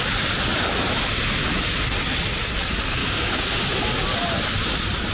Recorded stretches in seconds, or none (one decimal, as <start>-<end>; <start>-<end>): 0.0-3.0; 3.7-5.1